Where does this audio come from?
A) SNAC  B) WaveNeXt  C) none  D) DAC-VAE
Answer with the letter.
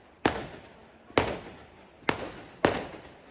C